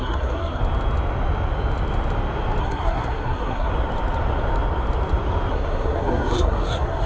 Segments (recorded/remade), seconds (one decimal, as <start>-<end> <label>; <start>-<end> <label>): 0.0-0.6 remade; 0.6-2.6 recorded; 2.6-3.7 remade; 3.7-5.5 recorded; 5.5-7.1 remade